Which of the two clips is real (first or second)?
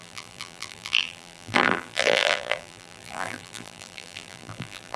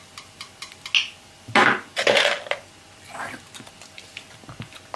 second